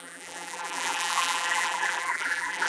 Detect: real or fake fake